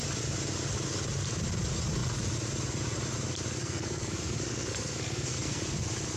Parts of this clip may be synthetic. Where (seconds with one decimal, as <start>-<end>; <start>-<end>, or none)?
3.6-5.6

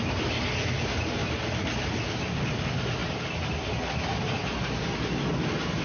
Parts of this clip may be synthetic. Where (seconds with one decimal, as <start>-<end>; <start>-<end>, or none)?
none

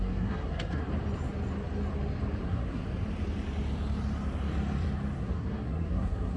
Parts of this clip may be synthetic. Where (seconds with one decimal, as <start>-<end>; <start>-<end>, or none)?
0.0-0.9; 2.4-2.8; 5.2-6.4

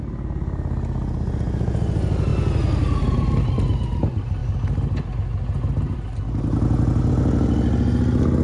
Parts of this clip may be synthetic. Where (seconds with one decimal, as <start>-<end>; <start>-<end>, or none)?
none